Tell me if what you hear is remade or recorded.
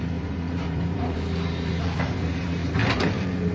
remade